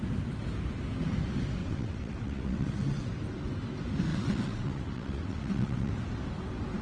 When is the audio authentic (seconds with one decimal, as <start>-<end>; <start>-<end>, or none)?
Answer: 0.0-1.6; 3.1-4.1; 5.9-6.8

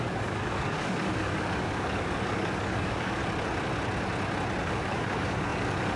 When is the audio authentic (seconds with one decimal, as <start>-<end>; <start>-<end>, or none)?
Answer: 3.2-4.6

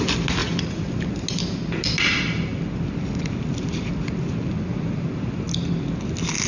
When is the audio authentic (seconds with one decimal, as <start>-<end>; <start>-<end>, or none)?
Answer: 0.0-0.4; 0.9-6.5

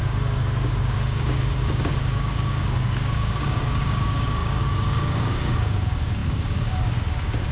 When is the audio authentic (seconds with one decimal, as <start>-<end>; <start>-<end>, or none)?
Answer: none

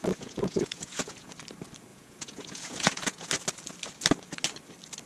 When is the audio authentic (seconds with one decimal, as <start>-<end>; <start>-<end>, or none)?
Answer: 1.3-1.9; 3.3-5.1